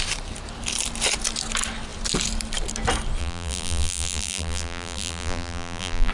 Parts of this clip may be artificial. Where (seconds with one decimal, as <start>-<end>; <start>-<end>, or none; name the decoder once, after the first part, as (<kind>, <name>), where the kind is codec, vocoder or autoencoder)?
3.2-6.1 (vocoder, BigVGAN v2)